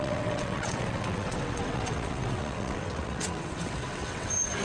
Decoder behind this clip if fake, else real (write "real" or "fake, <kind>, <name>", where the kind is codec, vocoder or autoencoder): fake, vocoder, WaveNeXt